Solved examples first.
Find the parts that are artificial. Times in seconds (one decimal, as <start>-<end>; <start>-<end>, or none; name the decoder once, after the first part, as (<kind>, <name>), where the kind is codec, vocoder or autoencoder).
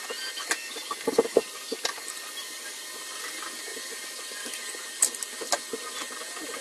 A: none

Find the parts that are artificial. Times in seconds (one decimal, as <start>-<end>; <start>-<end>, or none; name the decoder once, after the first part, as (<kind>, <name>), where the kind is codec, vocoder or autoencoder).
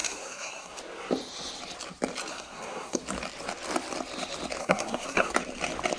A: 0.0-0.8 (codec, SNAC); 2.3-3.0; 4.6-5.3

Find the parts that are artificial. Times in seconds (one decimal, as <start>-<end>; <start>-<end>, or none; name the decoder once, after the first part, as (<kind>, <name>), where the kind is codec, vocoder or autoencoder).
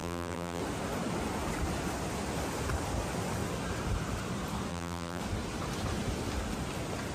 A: 0.0-0.6 (vocoder, BigVGAN v2); 4.7-5.2